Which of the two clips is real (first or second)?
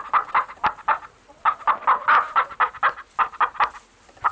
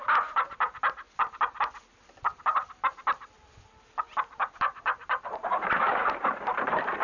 first